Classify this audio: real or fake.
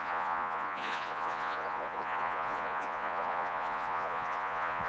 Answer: fake